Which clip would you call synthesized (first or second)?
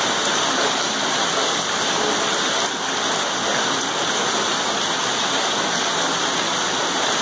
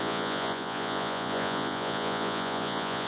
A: second